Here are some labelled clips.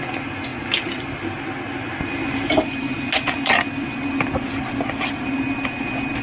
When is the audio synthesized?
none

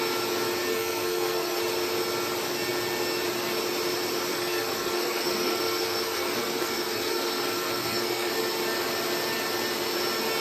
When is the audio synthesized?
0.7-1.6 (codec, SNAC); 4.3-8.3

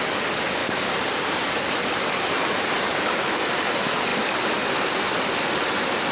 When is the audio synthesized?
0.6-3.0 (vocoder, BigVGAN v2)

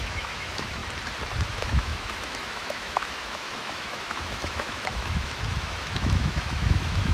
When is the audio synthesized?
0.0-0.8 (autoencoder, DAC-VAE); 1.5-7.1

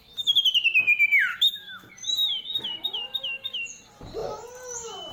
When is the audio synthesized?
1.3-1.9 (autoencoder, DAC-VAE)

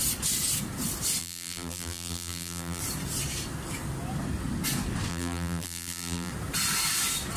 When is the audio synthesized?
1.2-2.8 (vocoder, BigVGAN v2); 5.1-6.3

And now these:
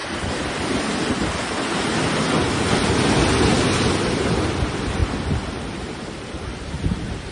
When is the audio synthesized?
5.0-7.3 (vocoder, BigVGAN v2)

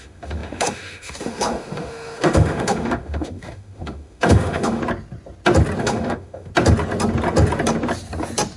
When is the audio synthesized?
0.0-4.8 (autoencoder, DAC-VAE); 5.8-6.5